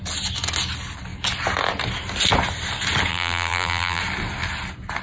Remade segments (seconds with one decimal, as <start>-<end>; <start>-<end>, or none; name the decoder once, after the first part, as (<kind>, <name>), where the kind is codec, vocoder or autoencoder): 3.1-4.0 (vocoder, BigVGAN v2)